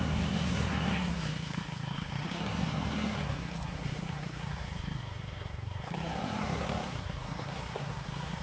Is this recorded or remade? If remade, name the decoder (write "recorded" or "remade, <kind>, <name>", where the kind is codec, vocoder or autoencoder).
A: remade, codec, SNAC